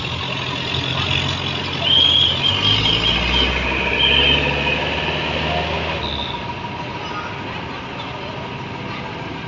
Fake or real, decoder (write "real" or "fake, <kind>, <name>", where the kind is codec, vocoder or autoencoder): real